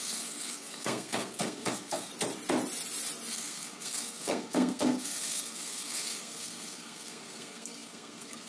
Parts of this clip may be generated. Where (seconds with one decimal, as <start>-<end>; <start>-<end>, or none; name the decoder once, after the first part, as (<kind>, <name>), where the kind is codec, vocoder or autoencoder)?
0.0-2.1 (codec, SNAC); 3.3-8.5